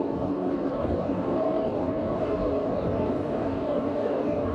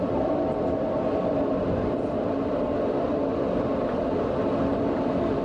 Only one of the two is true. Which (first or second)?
second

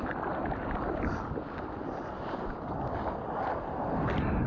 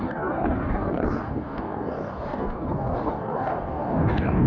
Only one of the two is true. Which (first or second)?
first